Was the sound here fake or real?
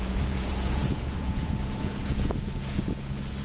fake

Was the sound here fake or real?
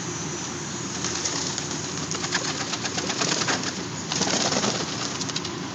real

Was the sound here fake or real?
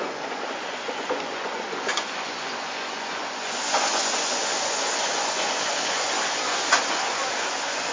fake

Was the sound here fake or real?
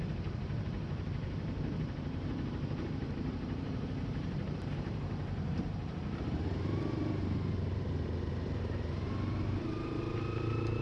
fake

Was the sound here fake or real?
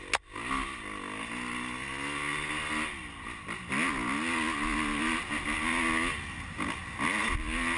real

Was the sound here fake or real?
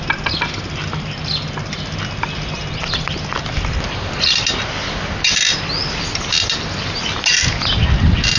real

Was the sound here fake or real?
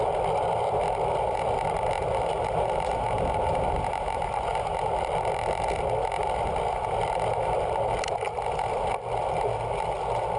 real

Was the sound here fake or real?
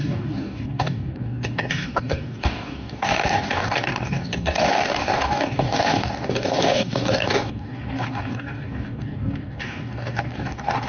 fake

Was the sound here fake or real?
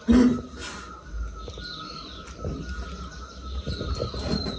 real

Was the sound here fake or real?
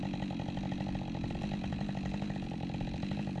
real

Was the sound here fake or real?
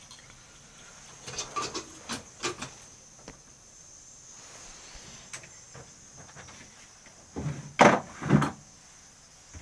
real